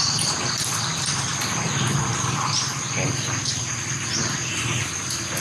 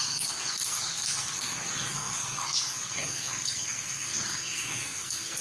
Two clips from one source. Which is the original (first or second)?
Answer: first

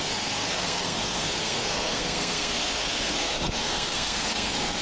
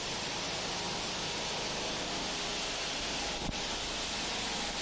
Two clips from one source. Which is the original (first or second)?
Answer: second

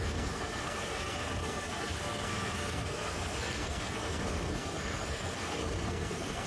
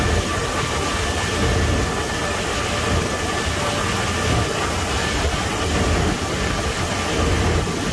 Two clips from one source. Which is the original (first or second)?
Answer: second